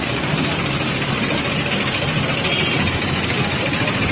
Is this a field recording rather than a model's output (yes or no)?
yes